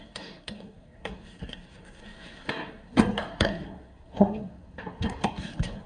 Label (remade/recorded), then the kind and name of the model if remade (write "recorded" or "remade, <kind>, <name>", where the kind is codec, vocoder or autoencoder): remade, codec, SNAC